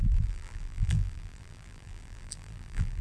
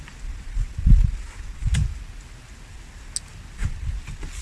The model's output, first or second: first